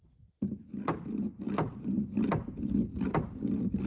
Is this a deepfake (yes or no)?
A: no